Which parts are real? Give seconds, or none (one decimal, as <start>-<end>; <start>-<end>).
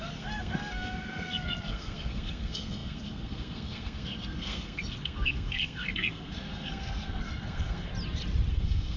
7.9-8.5